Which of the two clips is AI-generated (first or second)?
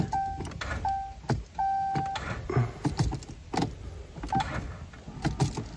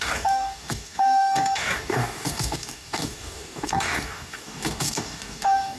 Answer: second